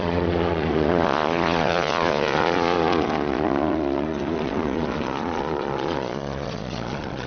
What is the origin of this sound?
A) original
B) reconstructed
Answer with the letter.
B